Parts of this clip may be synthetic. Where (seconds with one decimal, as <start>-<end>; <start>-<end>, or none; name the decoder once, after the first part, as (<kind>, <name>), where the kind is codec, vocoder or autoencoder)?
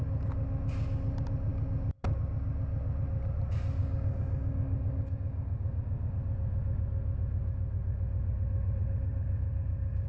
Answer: 3.8-6.2 (codec, DAC)